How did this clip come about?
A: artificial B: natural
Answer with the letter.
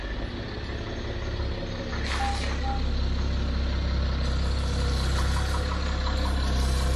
B